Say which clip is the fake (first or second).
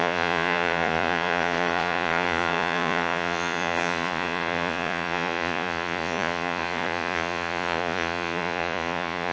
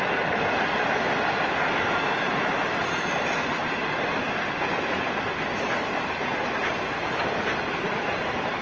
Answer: first